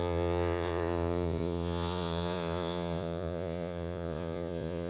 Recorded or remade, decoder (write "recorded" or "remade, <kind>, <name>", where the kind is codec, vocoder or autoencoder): remade, vocoder, Vocos